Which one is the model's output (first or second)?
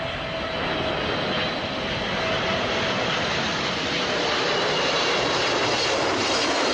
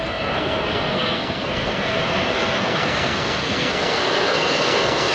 second